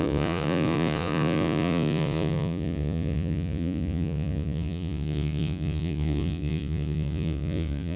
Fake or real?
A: fake